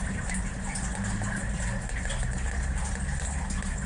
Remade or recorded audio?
recorded